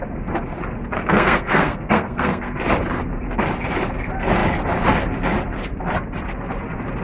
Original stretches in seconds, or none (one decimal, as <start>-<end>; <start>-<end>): 0.0-1.0; 2.6-7.0